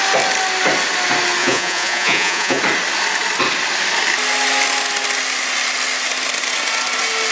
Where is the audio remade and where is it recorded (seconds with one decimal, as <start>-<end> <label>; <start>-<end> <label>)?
0.0-1.4 recorded; 1.4-2.6 remade; 2.6-7.3 recorded